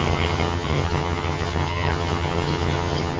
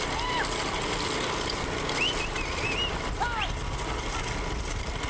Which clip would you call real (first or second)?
second